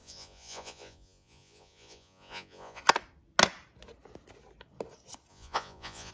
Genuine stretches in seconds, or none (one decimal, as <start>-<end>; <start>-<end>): 2.8-5.3